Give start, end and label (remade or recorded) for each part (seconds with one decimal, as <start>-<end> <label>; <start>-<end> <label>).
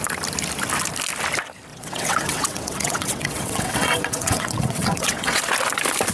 0.0-1.7 recorded; 1.7-5.4 remade; 5.4-6.1 recorded